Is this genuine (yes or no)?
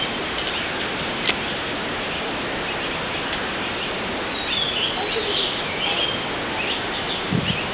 yes